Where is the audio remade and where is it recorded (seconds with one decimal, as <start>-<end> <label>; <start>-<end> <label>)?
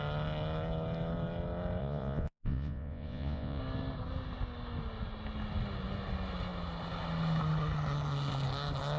0.0-1.8 recorded; 1.8-3.6 remade; 3.6-9.0 recorded